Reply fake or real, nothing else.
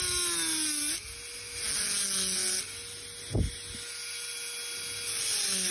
real